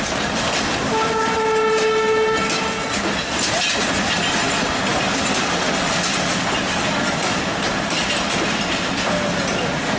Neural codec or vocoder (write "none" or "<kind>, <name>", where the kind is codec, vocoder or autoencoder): none